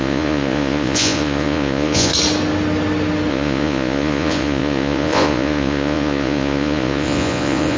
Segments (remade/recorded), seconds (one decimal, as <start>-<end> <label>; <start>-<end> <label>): 0.0-2.1 remade; 2.1-3.3 recorded; 3.3-7.8 remade